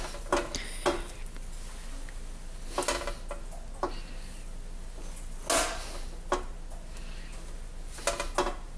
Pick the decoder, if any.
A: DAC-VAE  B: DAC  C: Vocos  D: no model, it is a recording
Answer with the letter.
D